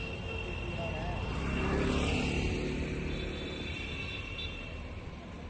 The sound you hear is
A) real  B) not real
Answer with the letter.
A